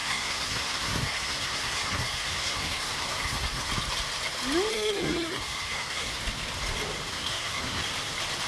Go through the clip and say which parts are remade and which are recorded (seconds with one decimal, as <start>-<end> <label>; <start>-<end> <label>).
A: 0.0-3.7 remade; 3.7-4.7 recorded; 4.7-6.2 remade; 6.2-7.1 recorded; 7.1-7.8 remade; 7.8-8.5 recorded